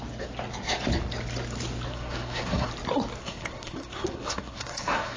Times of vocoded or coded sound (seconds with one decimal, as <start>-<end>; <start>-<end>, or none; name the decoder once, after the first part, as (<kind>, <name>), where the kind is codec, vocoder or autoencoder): 1.9-2.7 (codec, SNAC); 3.2-5.2